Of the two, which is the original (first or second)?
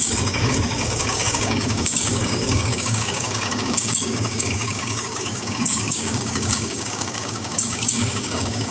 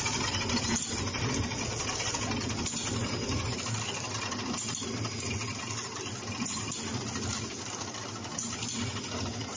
second